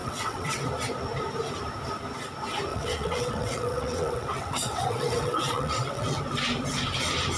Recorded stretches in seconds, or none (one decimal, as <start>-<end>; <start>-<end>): 0.6-2.7; 6.2-7.4